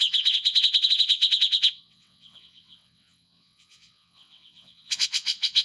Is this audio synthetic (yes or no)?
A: yes